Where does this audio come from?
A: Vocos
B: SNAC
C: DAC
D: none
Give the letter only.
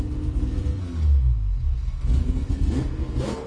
B